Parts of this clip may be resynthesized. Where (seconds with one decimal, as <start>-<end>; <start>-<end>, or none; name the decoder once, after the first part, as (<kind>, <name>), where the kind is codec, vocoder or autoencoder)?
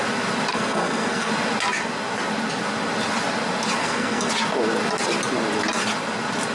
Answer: 0.5-1.3 (codec, SNAC); 3.8-4.3